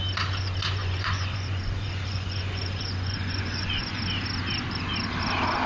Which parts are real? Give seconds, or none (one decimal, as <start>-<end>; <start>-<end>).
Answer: 0.0-0.8; 4.0-5.7